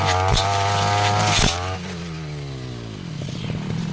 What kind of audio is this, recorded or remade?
recorded